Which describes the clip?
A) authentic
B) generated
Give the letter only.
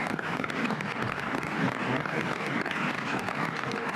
B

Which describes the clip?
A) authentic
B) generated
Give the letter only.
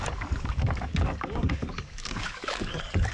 B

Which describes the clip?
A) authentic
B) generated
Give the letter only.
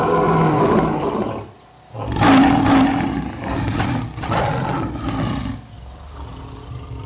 A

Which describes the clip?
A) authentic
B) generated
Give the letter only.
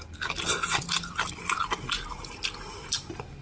A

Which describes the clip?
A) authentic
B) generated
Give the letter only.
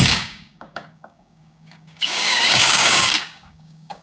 B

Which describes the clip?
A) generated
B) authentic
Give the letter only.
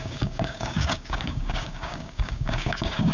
A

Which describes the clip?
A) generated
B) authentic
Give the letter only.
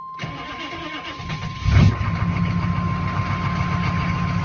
B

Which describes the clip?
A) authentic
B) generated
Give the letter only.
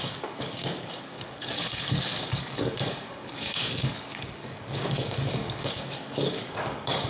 B